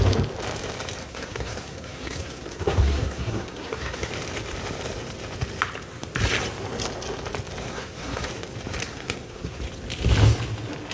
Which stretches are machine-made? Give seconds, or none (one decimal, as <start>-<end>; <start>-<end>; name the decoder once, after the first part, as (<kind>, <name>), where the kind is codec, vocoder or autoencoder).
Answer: 1.0-4.1 (codec, SNAC); 7.7-8.3; 8.8-9.6